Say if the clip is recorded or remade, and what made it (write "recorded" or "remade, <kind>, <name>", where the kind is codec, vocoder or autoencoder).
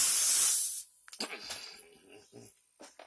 recorded